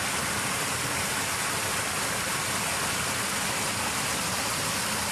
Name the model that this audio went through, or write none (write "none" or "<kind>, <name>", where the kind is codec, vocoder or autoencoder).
none